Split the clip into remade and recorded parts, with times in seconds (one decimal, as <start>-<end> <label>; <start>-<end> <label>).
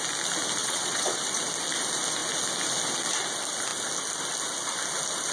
0.0-0.6 recorded; 0.6-1.2 remade; 1.2-5.3 recorded